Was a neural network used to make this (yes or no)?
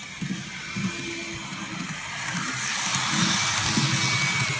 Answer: no